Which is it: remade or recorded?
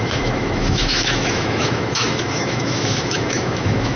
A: remade